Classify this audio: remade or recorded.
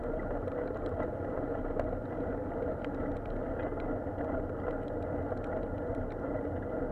recorded